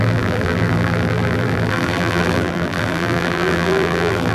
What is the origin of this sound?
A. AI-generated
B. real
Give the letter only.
A